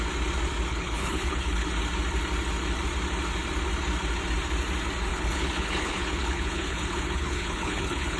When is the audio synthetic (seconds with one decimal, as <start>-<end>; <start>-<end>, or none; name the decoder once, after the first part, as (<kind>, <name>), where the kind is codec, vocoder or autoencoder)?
0.7-1.7 (codec, HILCodec); 5.1-8.2